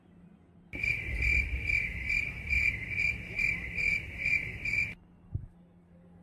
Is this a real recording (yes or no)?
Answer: yes